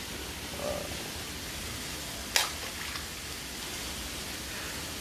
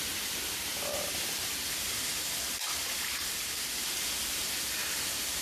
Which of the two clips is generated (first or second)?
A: second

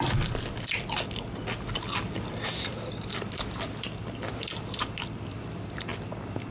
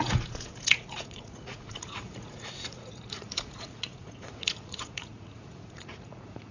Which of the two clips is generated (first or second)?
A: second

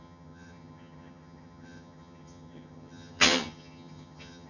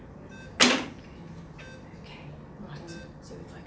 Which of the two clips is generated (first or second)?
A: first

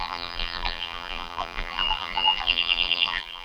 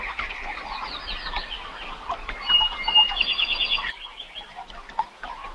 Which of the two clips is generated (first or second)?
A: first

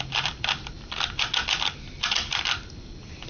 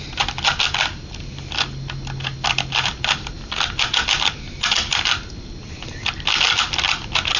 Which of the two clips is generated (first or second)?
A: first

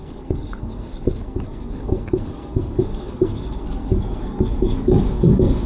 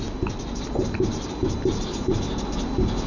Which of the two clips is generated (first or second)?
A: first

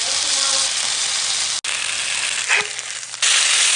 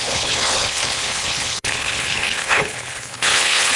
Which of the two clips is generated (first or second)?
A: second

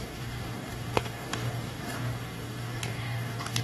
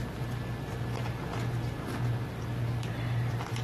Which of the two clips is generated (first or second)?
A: first